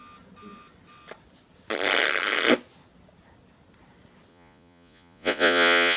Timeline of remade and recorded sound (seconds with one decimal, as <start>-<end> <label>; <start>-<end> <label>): 0.0-4.3 recorded; 4.3-6.0 remade